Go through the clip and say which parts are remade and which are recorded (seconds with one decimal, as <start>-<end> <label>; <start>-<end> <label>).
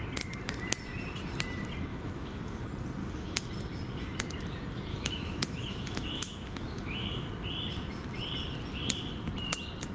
0.0-1.9 recorded; 1.9-2.6 remade; 2.6-3.0 recorded; 3.0-3.5 remade; 3.5-4.9 recorded; 4.9-7.3 remade; 7.3-9.9 recorded